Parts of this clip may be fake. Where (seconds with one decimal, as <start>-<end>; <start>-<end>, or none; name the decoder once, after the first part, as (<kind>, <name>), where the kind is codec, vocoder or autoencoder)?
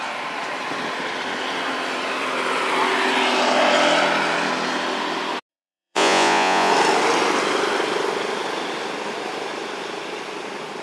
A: 5.5-6.7 (vocoder, Vocos)